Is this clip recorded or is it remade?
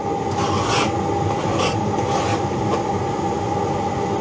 recorded